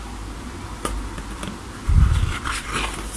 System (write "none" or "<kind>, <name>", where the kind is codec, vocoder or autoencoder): none